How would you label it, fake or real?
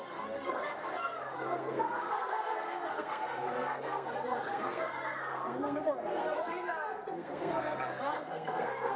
fake